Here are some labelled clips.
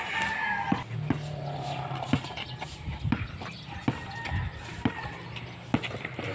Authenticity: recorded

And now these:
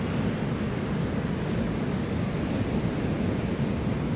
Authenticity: recorded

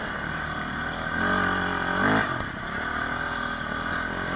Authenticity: recorded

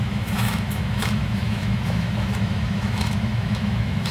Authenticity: remade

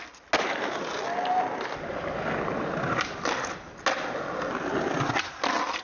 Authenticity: recorded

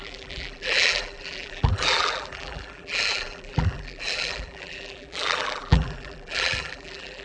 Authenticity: remade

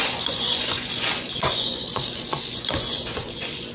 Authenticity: remade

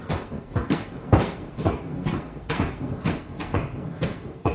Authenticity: remade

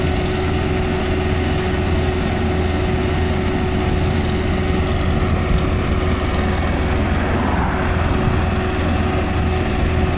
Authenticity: recorded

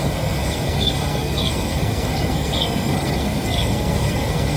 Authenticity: remade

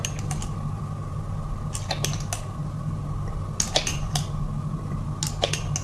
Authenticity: recorded